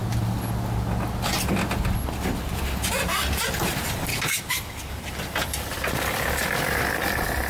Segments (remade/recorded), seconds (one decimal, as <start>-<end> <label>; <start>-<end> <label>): 0.0-4.1 recorded; 4.1-5.0 remade; 5.0-7.5 recorded